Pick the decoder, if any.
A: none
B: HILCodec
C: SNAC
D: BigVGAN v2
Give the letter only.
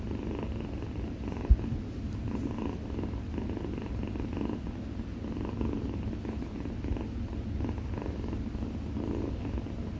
A